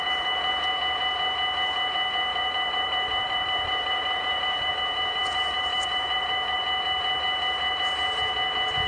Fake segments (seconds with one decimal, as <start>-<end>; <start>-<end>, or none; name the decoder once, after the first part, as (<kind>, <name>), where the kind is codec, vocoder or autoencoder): 2.3-4.7 (vocoder, BigVGAN v2); 5.2-6.6